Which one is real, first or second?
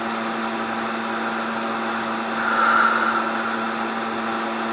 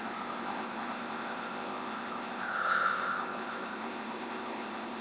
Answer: first